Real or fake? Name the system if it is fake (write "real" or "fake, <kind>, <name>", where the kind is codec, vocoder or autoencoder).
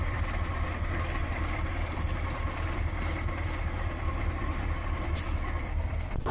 real